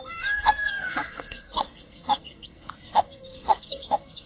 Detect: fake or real fake